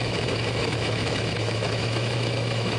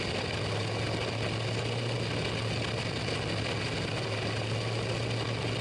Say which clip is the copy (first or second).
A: first